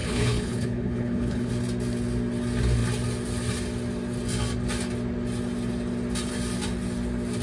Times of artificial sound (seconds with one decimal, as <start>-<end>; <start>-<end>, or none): 0.0-1.5